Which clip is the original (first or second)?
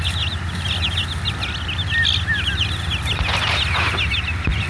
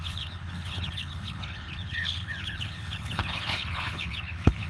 first